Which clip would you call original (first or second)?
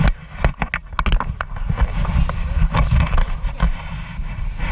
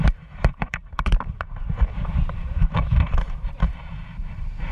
first